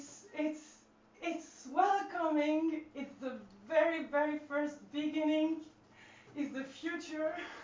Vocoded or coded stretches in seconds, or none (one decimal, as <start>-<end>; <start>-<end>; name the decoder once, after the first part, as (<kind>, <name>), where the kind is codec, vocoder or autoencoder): none

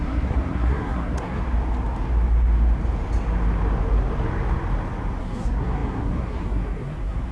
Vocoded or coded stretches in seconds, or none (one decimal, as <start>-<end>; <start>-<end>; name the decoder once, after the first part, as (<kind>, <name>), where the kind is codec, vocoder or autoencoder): 0.0-1.4 (codec, SNAC); 5.2-7.3

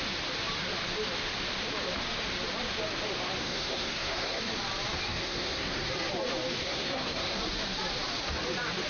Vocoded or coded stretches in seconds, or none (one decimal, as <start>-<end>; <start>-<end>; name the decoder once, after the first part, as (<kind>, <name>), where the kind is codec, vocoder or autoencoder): 3.4-4.4 (codec, SNAC); 5.1-5.9; 6.6-7.4

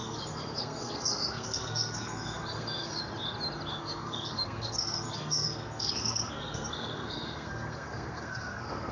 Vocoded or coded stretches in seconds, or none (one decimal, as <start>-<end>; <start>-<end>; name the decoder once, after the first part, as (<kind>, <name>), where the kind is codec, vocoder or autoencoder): 0.0-3.0 (codec, SNAC); 3.7-8.9

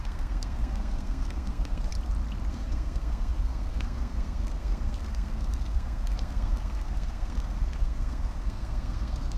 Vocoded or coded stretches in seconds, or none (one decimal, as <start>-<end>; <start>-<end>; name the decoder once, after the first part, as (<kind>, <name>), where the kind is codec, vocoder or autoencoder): 0.0-1.9 (codec, SNAC); 2.5-9.4

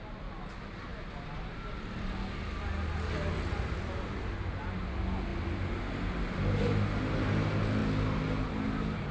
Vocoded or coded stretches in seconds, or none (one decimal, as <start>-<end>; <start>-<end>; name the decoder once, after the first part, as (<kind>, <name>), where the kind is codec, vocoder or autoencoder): none

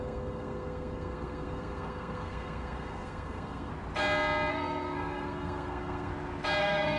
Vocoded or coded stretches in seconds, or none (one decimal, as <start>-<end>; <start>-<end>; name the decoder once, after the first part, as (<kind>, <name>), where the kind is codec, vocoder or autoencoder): 0.0-3.7 (codec, SNAC); 4.5-6.1; 6.6-7.0

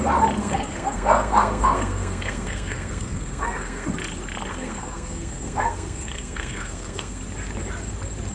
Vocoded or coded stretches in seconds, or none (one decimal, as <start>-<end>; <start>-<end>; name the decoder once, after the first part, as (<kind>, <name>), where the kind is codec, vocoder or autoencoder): 0.4-3.9 (codec, SNAC); 4.5-7.2